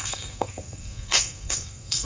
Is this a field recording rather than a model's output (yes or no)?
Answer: no